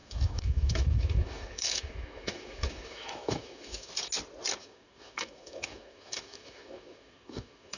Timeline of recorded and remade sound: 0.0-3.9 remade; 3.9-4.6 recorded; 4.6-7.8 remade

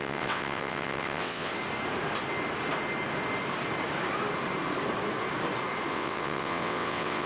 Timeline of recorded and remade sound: 0.0-1.5 remade; 1.5-5.9 recorded; 5.9-7.3 remade

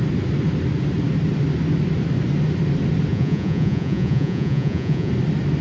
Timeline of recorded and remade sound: 0.0-3.1 recorded; 3.1-5.1 remade; 5.1-5.6 recorded

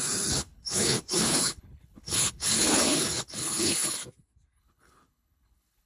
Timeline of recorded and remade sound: 0.0-4.0 remade; 4.0-4.6 recorded; 4.6-5.9 remade

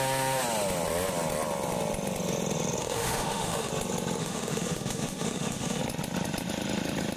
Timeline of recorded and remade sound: 0.0-2.8 recorded; 2.8-3.7 remade; 3.7-4.2 recorded; 4.2-5.8 remade; 5.8-7.2 recorded

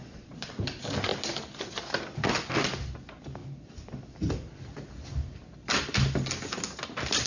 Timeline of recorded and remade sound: 0.0-0.5 remade; 0.5-7.3 recorded